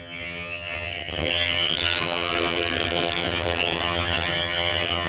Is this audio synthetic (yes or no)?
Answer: yes